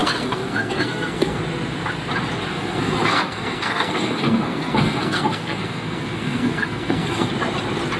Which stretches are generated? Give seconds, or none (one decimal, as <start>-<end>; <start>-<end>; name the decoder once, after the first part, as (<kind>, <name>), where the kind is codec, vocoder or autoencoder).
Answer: 0.0-1.4 (codec, SNAC); 2.5-7.3

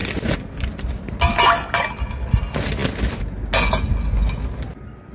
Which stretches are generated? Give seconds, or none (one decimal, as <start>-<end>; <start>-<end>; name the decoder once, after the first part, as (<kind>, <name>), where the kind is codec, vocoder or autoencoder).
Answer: none

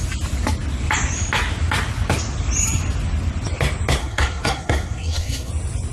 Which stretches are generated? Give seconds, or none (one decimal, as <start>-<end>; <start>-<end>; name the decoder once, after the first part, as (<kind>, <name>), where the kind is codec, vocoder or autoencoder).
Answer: 4.0-5.5 (codec, SNAC)

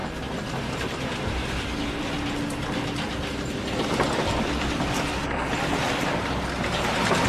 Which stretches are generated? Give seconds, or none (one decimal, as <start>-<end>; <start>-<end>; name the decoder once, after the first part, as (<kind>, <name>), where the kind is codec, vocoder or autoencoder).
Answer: none

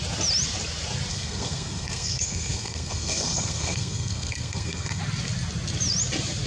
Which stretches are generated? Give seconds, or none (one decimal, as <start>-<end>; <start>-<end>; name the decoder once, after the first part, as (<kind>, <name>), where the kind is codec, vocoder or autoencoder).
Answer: 1.1-5.0 (codec, SNAC)

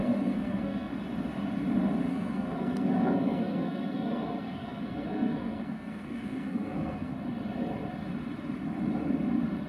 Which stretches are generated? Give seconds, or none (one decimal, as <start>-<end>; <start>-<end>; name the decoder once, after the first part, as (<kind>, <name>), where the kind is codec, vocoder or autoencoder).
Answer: 0.0-0.9 (codec, SNAC); 2.1-7.1